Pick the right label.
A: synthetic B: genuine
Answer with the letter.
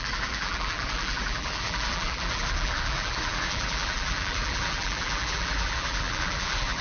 A